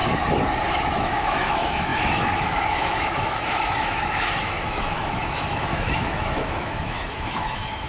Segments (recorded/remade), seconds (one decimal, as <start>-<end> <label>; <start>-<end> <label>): 0.0-0.7 recorded; 0.7-7.9 remade